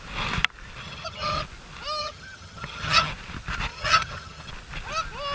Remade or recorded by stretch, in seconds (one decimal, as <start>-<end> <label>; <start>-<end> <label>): 0.0-0.8 recorded; 0.8-1.4 remade; 1.4-2.0 recorded; 2.0-3.1 remade; 3.1-3.7 recorded; 3.7-4.5 remade; 4.5-5.3 recorded